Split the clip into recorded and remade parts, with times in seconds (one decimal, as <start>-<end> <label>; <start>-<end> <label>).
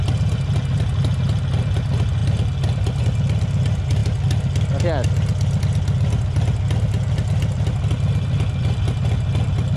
0.0-9.8 recorded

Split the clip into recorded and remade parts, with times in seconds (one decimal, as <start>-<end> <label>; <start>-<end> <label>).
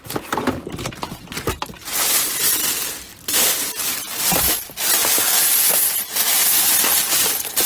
0.0-3.1 recorded; 3.1-3.8 remade; 3.8-7.7 recorded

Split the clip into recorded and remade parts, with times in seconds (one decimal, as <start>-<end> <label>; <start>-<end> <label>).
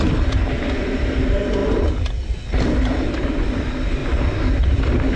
0.0-4.0 recorded; 4.0-5.2 remade